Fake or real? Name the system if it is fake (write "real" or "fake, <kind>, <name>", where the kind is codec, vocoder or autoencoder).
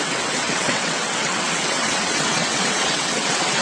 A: fake, vocoder, WaveNeXt